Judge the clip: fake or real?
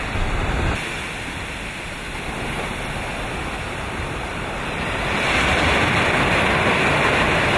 fake